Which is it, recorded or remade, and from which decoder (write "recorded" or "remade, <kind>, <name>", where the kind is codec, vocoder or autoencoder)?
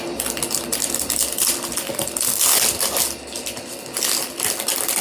recorded